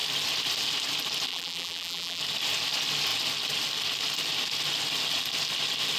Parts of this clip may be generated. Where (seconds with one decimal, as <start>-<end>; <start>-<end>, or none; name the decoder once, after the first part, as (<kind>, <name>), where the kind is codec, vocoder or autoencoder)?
1.3-2.2 (vocoder, BigVGAN v2)